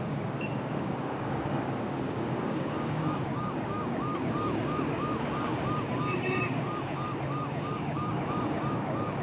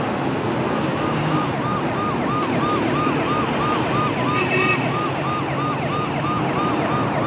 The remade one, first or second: first